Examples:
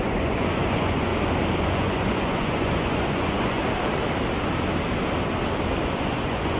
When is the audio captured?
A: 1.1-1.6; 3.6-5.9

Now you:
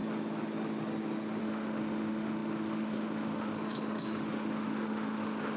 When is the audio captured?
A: 0.0-1.4

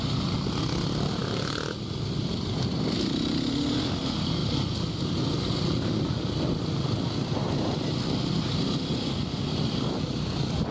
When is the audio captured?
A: 0.0-10.7

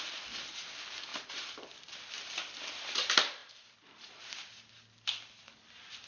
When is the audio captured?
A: 0.0-1.1; 1.9-3.4; 4.2-6.1

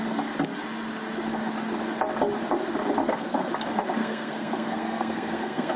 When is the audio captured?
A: 0.0-3.0; 3.5-4.0

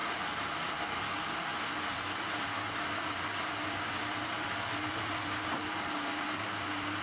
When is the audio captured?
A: 0.0-7.0